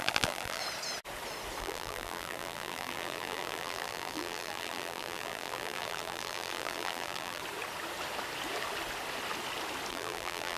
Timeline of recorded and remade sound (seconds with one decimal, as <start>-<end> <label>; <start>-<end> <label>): 0.0-0.6 remade; 0.6-1.6 recorded; 1.6-7.4 remade; 7.4-9.9 recorded; 9.9-10.6 remade